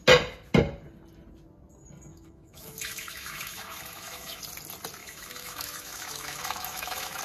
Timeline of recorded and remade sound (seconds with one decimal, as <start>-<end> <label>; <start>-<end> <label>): 0.0-2.1 recorded; 2.1-4.4 remade; 4.4-5.0 recorded; 5.0-7.2 remade